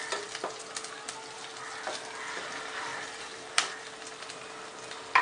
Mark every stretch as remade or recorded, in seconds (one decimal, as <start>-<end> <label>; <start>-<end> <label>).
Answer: 0.0-2.9 recorded; 2.9-3.8 remade; 3.8-5.2 recorded